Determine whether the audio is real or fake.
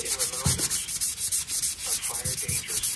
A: real